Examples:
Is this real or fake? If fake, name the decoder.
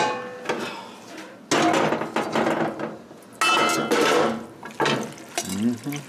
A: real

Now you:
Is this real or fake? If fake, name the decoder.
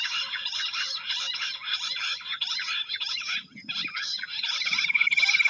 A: real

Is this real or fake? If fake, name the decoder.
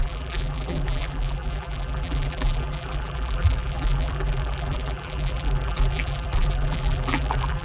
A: fake, vocoder, BigVGAN v2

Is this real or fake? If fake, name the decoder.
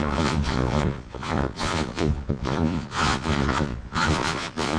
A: fake, vocoder, Vocos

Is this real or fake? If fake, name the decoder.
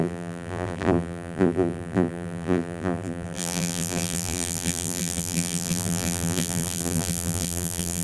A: fake, vocoder, BigVGAN v2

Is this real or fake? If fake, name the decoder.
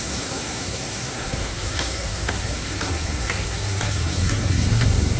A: fake, codec, SNAC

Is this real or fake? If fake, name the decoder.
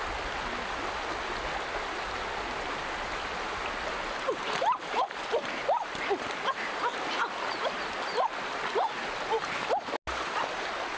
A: real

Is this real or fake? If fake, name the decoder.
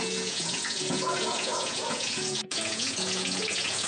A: fake, vocoder, Vocos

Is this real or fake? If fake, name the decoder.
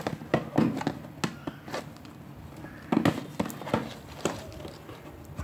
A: real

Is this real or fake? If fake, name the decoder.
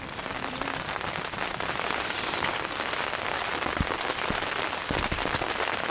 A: fake, vocoder, BigVGAN v2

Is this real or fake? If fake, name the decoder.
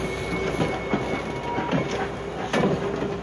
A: real